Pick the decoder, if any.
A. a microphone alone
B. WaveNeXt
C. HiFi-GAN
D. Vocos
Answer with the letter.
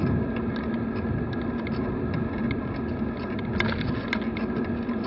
A